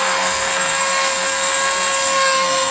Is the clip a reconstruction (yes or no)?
yes